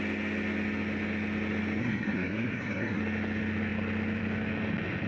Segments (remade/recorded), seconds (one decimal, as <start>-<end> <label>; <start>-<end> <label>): 0.0-1.8 recorded; 1.8-3.0 remade; 3.0-5.1 recorded